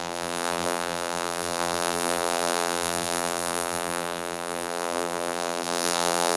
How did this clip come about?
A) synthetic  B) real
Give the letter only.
A